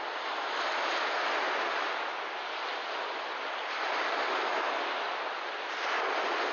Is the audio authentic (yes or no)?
yes